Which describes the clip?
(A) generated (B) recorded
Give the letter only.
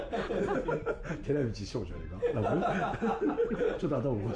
B